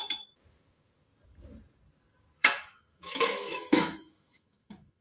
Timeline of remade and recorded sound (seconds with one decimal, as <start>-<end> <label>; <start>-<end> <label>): 0.0-2.4 recorded; 2.4-5.0 remade